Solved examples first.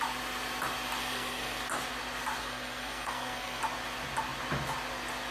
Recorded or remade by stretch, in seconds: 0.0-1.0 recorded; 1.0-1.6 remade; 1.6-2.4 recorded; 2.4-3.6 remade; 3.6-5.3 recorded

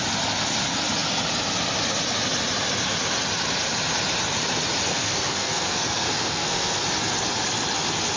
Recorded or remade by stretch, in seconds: 0.0-4.9 recorded; 4.9-6.8 remade; 6.8-8.2 recorded

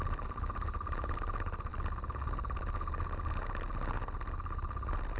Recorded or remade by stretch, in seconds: 0.0-5.2 recorded